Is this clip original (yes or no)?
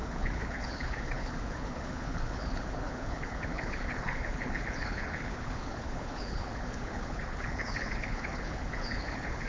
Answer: no